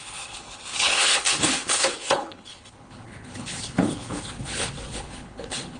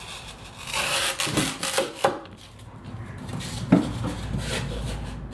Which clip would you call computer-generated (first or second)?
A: first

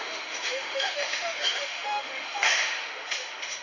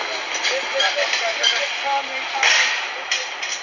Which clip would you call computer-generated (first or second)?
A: first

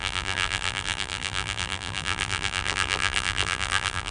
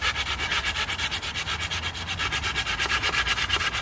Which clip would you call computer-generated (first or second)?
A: first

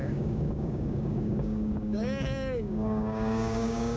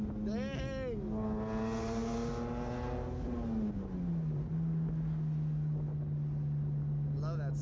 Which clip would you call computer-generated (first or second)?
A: first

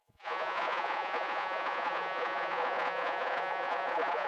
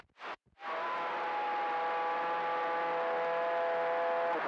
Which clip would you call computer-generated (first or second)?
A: first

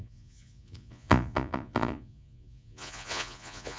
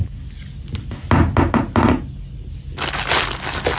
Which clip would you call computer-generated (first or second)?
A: first